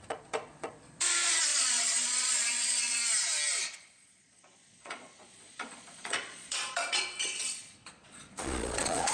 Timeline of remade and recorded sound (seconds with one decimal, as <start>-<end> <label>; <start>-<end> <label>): 0.0-3.0 remade; 3.0-3.8 recorded; 3.8-9.1 remade